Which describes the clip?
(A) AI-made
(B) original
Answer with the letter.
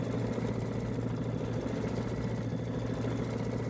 B